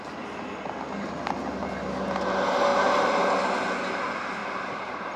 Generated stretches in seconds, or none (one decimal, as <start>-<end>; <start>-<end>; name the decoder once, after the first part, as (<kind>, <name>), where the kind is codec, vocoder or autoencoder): 2.7-3.3 (vocoder, BigVGAN v2); 4.4-5.2